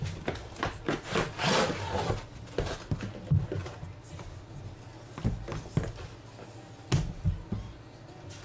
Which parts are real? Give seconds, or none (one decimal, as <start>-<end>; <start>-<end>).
0.0-8.4